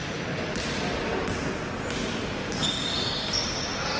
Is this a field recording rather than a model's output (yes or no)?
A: yes